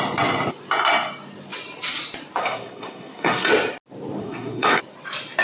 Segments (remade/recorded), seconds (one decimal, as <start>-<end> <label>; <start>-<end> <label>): 0.0-2.4 recorded; 2.4-3.5 remade; 3.5-4.2 recorded; 4.2-4.8 remade; 4.8-5.4 recorded